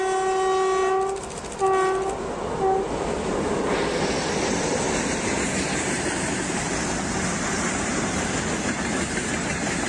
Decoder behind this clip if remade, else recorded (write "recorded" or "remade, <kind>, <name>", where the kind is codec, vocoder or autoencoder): recorded